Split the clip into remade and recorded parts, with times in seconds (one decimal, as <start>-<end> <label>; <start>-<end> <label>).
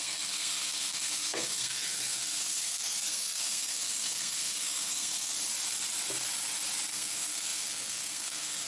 0.0-5.3 remade; 5.3-6.9 recorded; 6.9-8.7 remade